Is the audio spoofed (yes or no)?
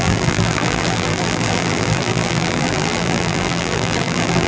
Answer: yes